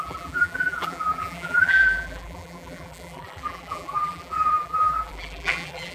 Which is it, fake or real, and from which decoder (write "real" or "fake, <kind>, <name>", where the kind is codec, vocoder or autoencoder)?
fake, vocoder, BigVGAN v2